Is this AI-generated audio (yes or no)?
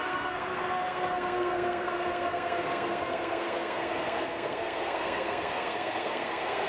yes